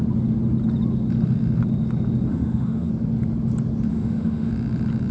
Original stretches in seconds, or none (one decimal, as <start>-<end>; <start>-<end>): 0.0-2.3; 2.9-3.9; 4.5-5.1